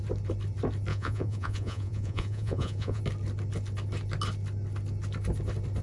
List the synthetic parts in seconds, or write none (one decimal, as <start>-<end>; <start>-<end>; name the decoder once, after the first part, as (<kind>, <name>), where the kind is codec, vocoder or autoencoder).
0.9-3.0 (vocoder, Vocos)